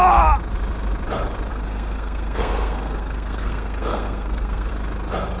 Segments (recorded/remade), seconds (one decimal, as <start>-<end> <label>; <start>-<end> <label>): 0.0-1.5 recorded; 1.5-4.7 remade; 4.7-5.4 recorded